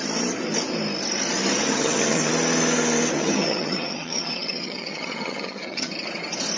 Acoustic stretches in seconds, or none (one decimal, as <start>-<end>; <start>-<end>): 0.0-1.7; 2.3-3.2; 5.9-6.6

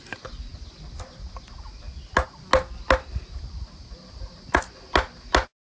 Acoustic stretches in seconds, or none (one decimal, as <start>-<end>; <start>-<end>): 0.0-5.6

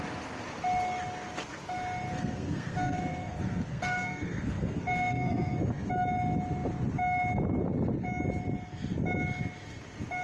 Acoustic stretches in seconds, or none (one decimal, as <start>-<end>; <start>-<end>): 0.0-2.1; 5.9-10.2

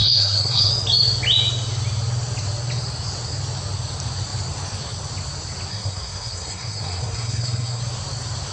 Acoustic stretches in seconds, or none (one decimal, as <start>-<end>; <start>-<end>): 0.7-5.7; 7.8-8.5

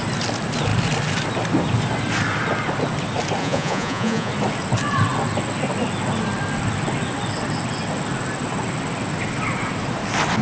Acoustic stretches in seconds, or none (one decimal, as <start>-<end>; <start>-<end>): 0.0-3.4; 4.3-10.4